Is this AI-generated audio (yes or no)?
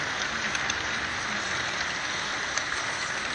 no